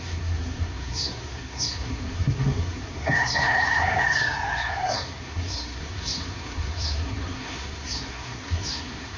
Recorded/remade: remade